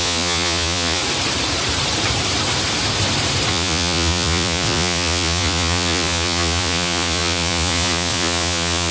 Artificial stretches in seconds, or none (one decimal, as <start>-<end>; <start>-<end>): 0.0-1.0; 3.5-8.9